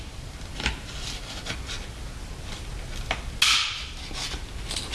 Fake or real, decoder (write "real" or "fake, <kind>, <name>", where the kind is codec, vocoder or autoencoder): real